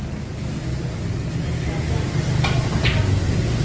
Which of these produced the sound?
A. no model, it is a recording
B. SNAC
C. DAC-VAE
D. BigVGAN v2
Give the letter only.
A